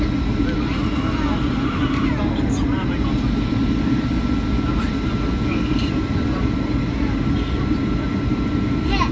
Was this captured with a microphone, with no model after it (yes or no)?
yes